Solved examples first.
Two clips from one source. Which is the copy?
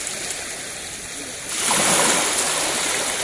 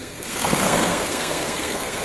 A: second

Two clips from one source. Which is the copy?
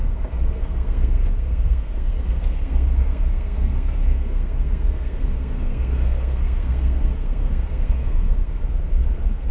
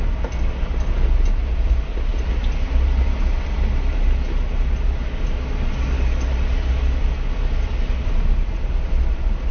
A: first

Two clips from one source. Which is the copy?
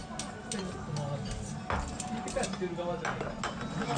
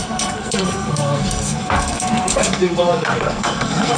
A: second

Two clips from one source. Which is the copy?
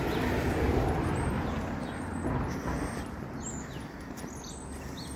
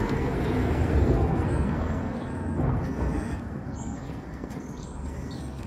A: second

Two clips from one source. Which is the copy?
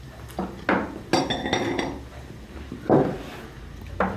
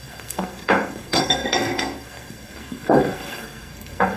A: second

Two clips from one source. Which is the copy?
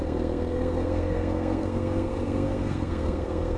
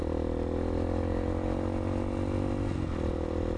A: first